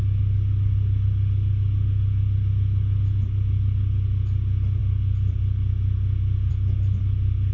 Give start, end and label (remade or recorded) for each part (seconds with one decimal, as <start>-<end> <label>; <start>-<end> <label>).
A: 0.0-7.5 recorded